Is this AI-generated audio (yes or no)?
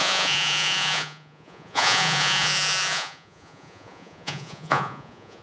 yes